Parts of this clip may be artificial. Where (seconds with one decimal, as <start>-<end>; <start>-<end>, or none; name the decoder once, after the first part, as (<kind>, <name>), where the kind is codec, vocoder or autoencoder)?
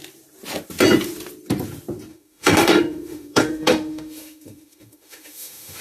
2.1-5.8 (autoencoder, DAC-VAE)